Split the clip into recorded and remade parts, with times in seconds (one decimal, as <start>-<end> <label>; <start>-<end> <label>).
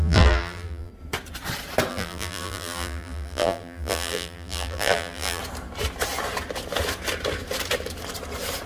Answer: 0.0-0.9 remade; 0.9-1.9 recorded; 1.9-5.4 remade; 5.4-8.7 recorded